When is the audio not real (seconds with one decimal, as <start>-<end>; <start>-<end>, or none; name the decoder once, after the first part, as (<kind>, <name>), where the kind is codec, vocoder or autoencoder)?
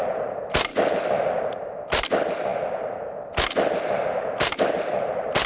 none